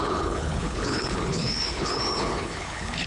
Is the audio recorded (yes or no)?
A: no